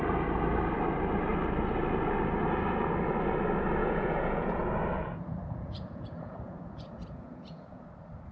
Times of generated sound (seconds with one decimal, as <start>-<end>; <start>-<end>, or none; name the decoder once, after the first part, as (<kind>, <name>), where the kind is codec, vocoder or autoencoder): 3.8-4.6 (vocoder, Vocos); 5.0-7.8